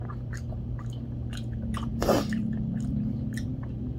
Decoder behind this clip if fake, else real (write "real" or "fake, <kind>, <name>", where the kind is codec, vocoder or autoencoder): fake, vocoder, BigVGAN v2